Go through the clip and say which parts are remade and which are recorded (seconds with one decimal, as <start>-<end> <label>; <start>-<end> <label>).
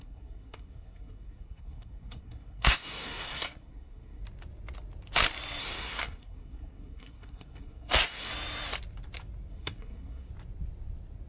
0.0-4.2 remade; 4.2-5.6 recorded; 5.6-8.3 remade; 8.3-9.5 recorded; 9.5-10.3 remade; 10.3-11.3 recorded